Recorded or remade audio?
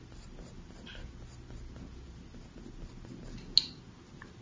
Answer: recorded